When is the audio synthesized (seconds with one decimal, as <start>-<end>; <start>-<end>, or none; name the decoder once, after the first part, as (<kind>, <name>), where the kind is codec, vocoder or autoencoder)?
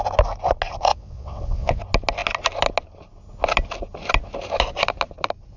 0.9-1.8 (vocoder, WaveNeXt)